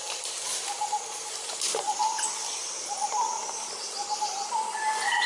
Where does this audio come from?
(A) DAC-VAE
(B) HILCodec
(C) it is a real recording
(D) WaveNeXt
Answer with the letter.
C